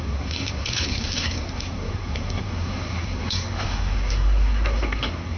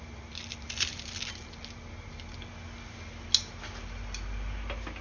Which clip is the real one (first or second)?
second